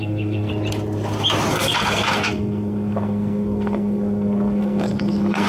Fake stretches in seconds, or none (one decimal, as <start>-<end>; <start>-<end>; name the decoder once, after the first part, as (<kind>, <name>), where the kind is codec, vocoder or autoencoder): 0.0-0.5 (codec, SNAC); 1.5-5.5